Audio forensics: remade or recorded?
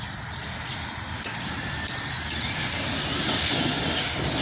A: recorded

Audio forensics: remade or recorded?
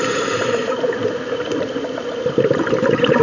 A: remade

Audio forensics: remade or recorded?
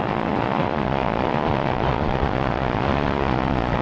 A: remade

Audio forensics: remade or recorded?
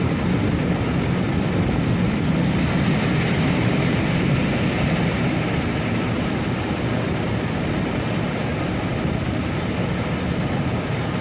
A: recorded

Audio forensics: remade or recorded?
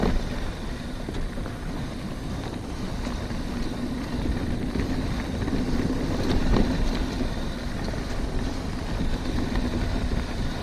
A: recorded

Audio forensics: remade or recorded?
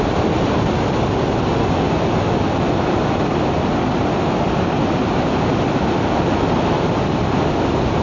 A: recorded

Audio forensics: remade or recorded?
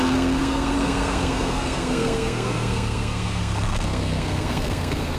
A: remade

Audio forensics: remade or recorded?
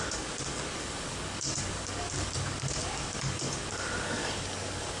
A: remade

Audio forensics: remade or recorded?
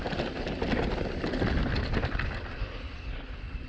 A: recorded